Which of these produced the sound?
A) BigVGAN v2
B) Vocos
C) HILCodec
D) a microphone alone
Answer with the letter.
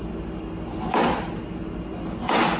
D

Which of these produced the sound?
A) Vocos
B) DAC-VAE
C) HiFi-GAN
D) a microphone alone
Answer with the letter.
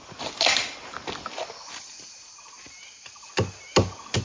D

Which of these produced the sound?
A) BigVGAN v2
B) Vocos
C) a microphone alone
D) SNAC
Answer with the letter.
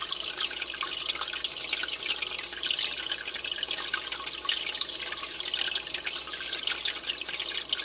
C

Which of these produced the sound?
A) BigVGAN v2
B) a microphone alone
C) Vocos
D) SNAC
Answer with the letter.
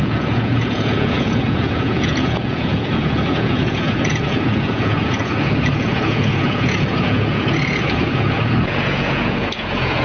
C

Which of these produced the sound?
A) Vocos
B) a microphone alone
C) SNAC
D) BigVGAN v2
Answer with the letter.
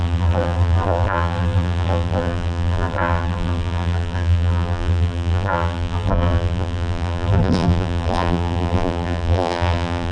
D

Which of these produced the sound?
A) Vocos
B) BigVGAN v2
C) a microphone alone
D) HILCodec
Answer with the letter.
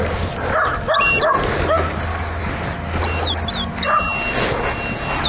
C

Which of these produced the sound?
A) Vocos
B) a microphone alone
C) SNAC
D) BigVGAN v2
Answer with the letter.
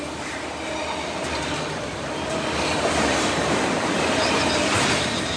B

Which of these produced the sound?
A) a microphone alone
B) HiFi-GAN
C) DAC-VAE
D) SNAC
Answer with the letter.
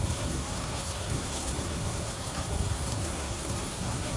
D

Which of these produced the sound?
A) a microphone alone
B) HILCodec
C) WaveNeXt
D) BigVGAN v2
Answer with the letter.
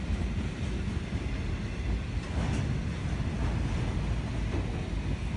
A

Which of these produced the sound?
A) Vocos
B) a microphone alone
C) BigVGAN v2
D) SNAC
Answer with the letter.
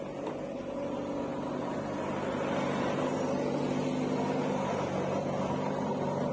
B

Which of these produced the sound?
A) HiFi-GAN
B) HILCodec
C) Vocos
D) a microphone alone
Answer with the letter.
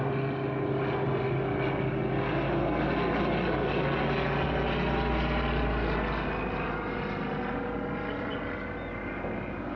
D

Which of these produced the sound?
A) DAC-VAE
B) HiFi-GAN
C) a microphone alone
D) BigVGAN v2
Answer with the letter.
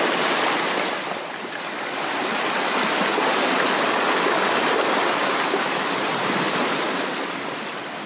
C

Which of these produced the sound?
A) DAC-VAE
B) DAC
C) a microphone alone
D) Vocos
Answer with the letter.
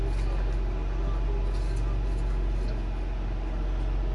C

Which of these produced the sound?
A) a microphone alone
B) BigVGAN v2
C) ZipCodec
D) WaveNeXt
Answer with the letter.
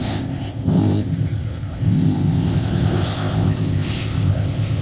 C